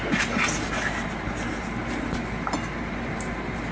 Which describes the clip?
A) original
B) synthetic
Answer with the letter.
A